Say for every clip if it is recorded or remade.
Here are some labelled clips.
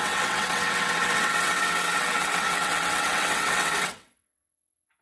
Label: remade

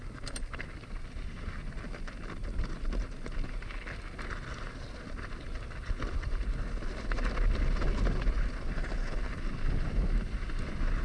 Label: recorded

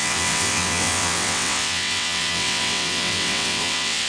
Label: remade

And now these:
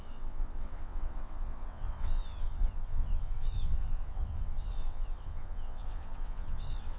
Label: remade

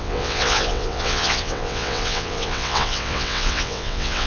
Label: remade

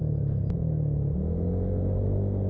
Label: recorded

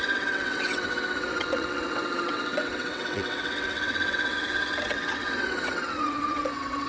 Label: remade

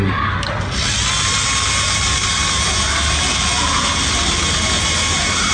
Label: recorded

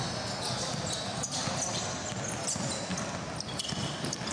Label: recorded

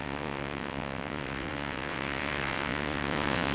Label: remade